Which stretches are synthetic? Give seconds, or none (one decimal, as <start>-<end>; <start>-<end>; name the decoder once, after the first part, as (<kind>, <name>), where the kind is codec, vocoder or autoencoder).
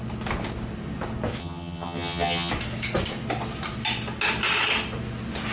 1.4-2.5 (vocoder, HiFi-GAN)